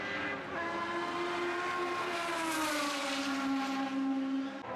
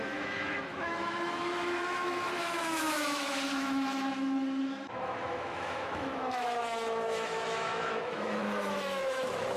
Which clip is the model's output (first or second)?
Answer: second